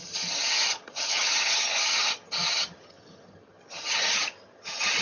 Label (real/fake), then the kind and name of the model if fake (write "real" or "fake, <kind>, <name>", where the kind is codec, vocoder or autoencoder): fake, vocoder, HiFi-GAN